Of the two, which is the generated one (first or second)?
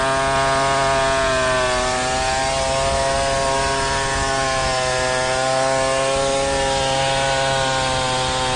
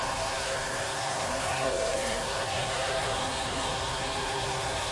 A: second